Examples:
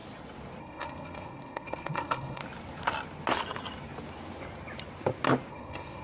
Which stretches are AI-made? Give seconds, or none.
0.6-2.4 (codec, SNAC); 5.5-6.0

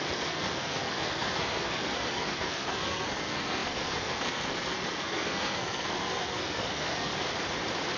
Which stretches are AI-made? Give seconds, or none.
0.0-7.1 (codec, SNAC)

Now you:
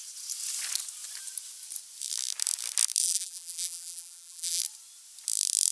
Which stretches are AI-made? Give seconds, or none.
3.0-4.6 (vocoder, BigVGAN v2)

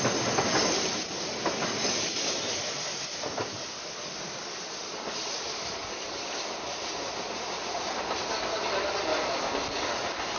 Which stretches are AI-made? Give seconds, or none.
none

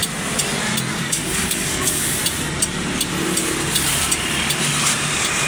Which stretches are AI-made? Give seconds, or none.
0.9-2.2 (codec, DAC)

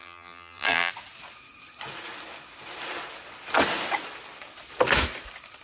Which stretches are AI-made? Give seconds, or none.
0.0-0.9 (vocoder, BigVGAN v2)

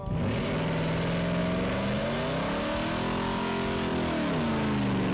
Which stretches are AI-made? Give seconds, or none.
none

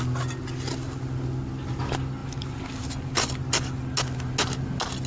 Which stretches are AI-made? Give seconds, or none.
none